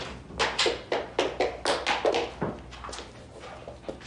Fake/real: real